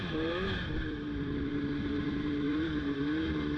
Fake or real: fake